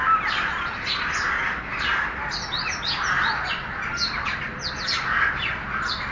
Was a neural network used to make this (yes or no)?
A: no